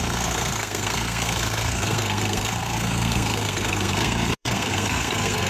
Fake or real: fake